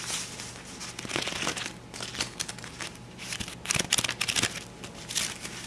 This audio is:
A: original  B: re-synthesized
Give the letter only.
A